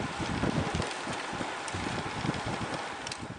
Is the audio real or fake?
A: real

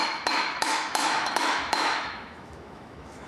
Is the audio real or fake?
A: fake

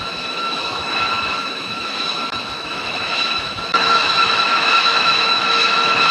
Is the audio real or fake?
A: fake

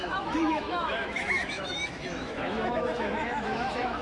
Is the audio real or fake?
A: fake